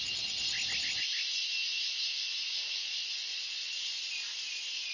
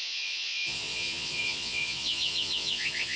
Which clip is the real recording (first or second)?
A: first